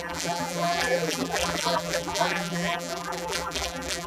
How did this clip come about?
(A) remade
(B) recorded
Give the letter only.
A